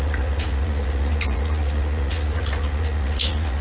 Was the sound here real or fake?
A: fake